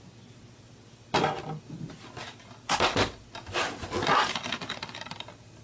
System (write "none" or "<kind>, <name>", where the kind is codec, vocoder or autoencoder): none